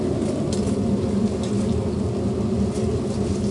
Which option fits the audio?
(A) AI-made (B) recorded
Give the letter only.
B